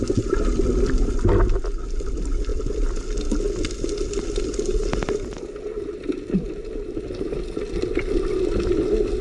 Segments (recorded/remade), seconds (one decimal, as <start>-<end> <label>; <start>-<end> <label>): 0.0-9.2 recorded